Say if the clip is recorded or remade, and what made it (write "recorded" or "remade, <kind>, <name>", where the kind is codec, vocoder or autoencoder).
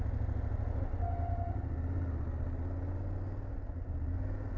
recorded